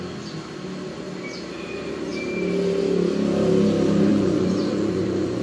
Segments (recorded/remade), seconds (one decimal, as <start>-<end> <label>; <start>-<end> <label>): 0.0-4.1 recorded; 4.1-5.4 remade

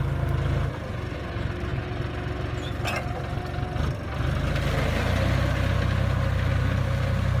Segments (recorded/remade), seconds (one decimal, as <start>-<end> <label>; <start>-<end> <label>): 0.0-7.4 recorded

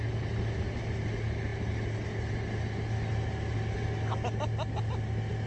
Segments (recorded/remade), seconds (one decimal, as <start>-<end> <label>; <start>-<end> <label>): 0.0-5.5 recorded

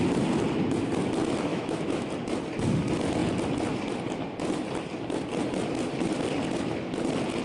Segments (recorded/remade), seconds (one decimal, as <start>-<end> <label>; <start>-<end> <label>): 0.0-1.5 recorded; 1.5-2.1 remade; 2.1-7.4 recorded

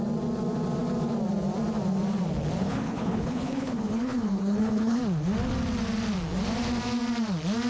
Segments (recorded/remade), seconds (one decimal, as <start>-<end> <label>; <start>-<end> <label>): 0.0-2.6 recorded; 2.6-5.0 remade; 5.0-7.7 recorded